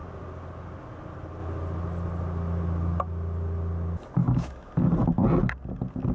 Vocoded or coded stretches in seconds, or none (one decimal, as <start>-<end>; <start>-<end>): 4.2-4.7